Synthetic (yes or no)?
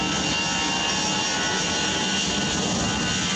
no